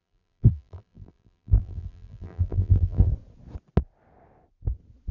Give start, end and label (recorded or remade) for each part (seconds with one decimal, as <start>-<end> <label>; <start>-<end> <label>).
0.0-3.1 remade; 3.1-5.1 recorded